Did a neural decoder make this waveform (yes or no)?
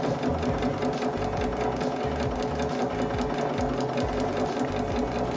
no